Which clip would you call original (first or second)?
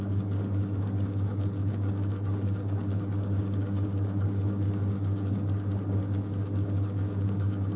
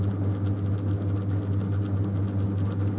second